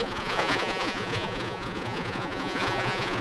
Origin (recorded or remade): remade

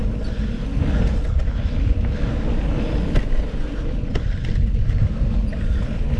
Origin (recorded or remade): recorded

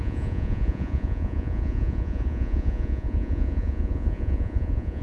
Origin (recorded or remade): remade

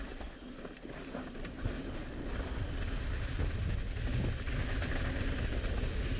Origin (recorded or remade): recorded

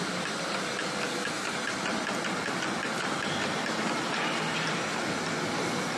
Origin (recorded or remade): recorded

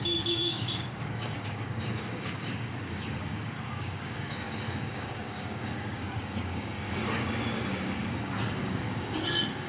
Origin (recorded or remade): remade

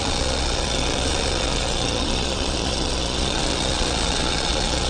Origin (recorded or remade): remade